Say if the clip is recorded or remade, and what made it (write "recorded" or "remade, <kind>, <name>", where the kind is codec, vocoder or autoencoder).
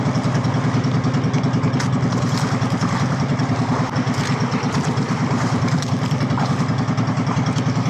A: recorded